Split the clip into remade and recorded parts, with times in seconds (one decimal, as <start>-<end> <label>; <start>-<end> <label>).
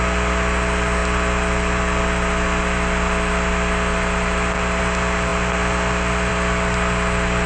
0.0-7.5 recorded